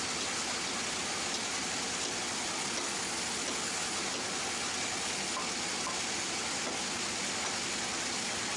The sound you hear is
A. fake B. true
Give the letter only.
B